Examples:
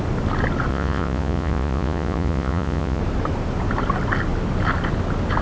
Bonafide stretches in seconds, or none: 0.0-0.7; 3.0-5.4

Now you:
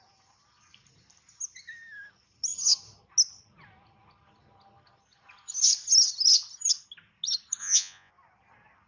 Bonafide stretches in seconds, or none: 0.0-7.6; 8.1-8.9

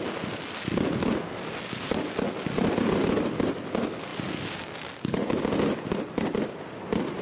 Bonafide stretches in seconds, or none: 0.0-7.2